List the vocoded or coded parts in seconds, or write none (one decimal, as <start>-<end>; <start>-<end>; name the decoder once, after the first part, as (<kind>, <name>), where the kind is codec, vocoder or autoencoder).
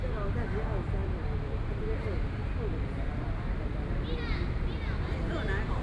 none